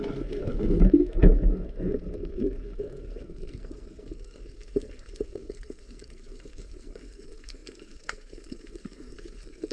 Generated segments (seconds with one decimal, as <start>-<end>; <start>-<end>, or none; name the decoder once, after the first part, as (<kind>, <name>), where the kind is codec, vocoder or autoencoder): 0.0-9.7 (codec, SNAC)